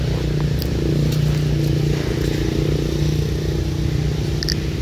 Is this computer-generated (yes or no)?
no